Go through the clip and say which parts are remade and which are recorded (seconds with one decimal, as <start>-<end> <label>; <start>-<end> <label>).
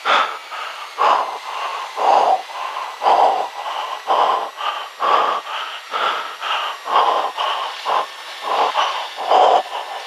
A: 0.0-0.4 recorded; 0.4-1.1 remade; 1.1-1.7 recorded; 1.7-4.1 remade; 4.1-10.1 recorded